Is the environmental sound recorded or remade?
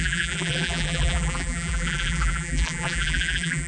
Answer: remade